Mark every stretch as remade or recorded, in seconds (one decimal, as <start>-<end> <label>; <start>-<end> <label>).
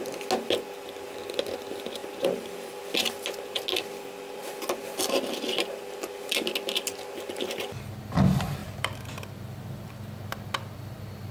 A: 0.0-2.0 recorded; 2.0-2.8 remade; 2.8-8.6 recorded; 8.6-9.9 remade; 9.9-11.3 recorded